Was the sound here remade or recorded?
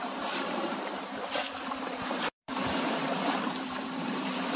remade